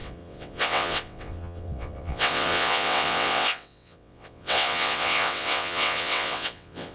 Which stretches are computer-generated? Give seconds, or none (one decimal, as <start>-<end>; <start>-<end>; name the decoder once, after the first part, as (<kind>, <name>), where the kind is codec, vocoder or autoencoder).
0.0-6.9 (vocoder, WaveNeXt)